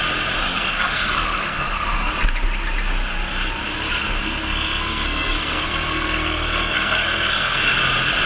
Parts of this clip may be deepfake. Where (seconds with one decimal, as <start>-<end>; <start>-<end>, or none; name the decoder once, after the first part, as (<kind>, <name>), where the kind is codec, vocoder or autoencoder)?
0.4-2.1 (codec, SNAC); 4.0-7.8